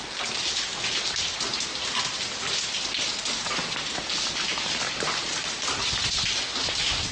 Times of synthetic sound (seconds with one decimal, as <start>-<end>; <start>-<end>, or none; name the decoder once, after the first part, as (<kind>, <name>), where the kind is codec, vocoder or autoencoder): none